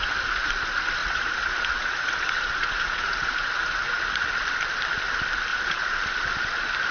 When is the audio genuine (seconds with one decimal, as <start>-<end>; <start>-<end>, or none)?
0.5-1.0; 4.3-5.5; 6.0-6.9